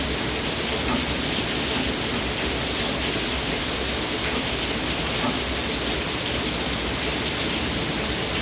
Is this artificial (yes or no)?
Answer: no